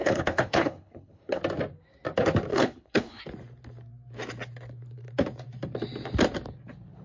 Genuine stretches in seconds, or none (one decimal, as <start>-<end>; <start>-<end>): 1.4-2.5; 3.2-7.0